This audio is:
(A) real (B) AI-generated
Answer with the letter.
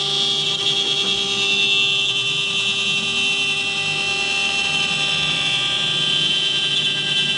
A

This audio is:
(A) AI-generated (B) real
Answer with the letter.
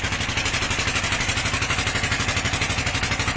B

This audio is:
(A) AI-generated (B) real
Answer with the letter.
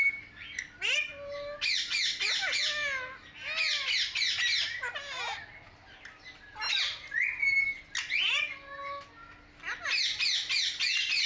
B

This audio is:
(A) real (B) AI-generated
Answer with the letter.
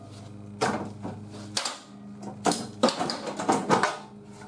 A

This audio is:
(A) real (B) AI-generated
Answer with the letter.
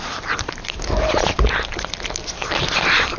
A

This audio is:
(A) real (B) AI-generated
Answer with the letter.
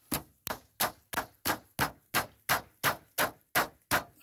A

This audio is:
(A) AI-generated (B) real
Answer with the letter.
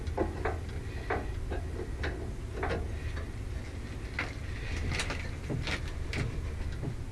B